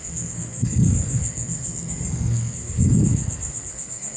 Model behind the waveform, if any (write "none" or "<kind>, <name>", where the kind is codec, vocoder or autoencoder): codec, SNAC